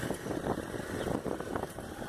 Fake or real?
real